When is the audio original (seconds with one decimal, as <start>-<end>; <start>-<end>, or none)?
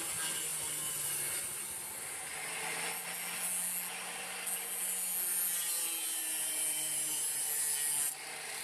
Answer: 0.0-8.6